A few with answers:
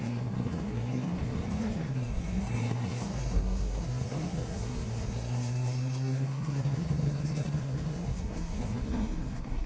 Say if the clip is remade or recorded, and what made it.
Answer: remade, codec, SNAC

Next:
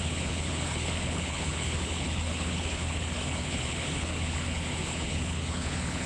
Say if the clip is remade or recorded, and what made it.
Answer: remade, codec, HILCodec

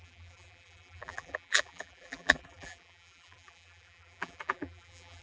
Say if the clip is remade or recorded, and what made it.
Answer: remade, vocoder, BigVGAN v2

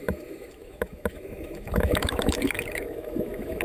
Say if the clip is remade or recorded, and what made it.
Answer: remade, autoencoder, DAC-VAE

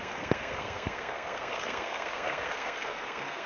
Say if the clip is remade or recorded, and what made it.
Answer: remade, codec, SNAC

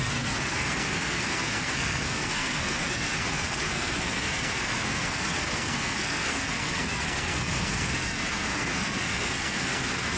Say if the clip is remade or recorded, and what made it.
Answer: remade, codec, SNAC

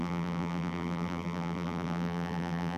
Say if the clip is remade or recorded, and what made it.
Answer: remade, vocoder, BigVGAN v2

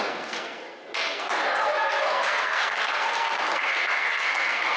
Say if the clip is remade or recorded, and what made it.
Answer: remade, codec, SNAC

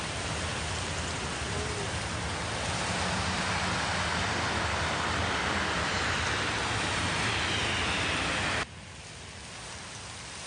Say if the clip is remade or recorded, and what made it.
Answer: recorded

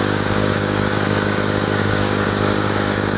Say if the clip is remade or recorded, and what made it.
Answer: remade, codec, DAC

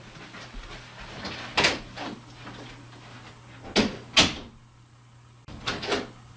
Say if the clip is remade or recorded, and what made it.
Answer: recorded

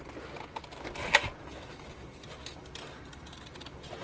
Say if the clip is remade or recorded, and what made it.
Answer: recorded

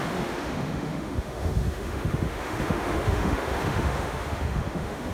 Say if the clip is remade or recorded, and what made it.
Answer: remade, autoencoder, DAC-VAE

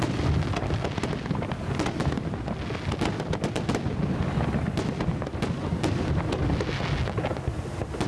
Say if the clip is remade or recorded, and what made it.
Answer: recorded